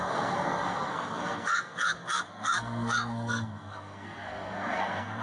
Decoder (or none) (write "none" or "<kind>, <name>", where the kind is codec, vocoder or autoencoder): codec, SNAC